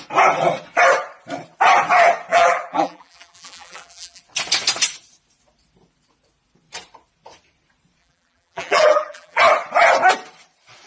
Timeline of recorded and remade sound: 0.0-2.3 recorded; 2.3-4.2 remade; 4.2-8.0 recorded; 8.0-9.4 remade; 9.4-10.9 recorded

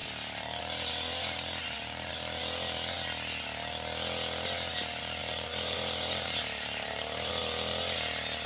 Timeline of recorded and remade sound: 0.0-2.1 remade; 2.1-5.2 recorded; 5.2-7.3 remade; 7.3-8.5 recorded

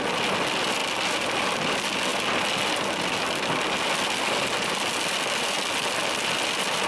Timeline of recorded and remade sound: 0.0-6.9 recorded

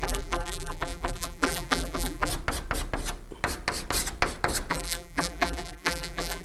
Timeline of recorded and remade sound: 0.0-2.3 remade; 2.3-4.7 recorded; 4.7-6.4 remade

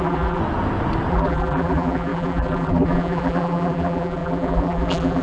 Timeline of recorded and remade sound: 0.0-0.4 remade; 0.4-1.1 recorded; 1.1-5.2 remade

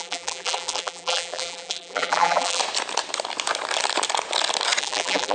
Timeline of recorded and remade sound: 0.0-2.6 remade; 2.6-4.8 recorded; 4.8-5.3 remade